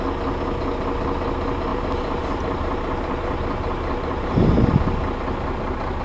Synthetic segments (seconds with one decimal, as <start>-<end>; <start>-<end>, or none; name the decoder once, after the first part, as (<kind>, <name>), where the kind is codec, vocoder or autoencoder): 1.7-4.8 (vocoder, BigVGAN v2)